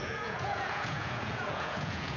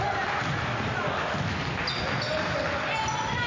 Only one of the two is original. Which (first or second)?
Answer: second